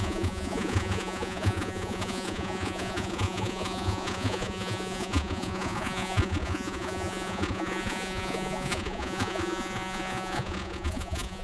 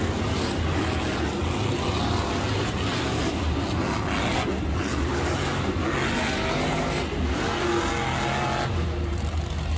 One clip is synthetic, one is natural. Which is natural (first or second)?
second